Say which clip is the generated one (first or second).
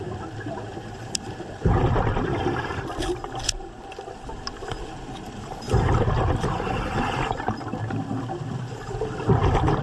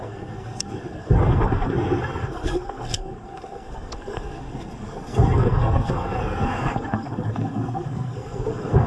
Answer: second